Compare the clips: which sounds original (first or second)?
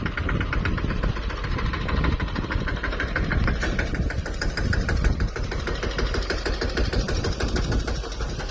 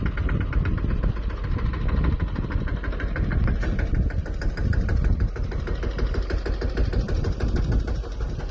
second